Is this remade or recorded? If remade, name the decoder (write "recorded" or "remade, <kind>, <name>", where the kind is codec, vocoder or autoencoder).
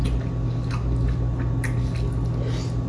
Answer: recorded